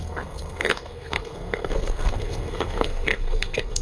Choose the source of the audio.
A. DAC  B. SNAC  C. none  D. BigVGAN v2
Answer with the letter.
B